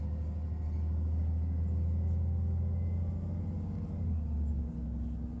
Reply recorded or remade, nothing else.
recorded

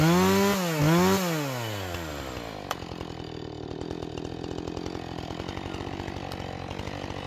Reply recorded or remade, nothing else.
recorded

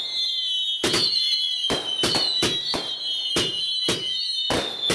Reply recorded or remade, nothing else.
recorded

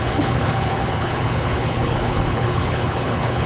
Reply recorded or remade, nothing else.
remade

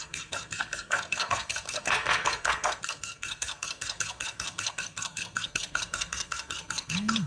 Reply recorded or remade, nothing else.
remade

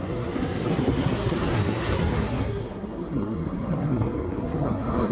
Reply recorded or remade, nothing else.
remade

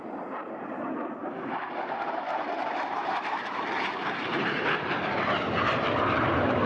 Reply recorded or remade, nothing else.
remade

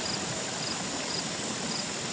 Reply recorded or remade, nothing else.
recorded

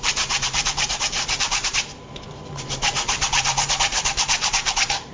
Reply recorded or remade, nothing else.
remade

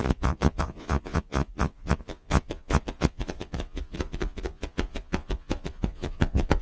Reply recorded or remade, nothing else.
remade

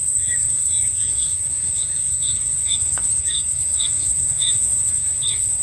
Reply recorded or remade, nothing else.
remade